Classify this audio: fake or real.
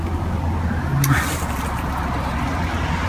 real